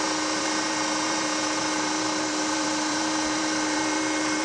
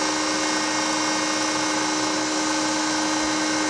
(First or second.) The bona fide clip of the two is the second